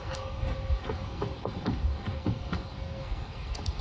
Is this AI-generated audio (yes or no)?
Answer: yes